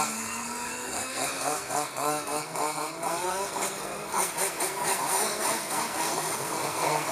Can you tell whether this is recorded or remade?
remade